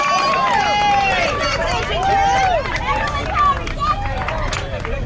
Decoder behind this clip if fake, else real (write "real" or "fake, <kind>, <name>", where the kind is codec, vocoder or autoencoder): real